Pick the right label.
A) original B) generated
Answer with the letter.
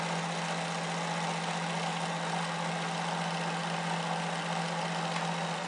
A